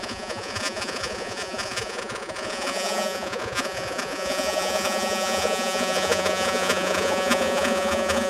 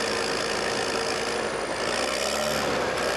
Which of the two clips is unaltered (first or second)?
second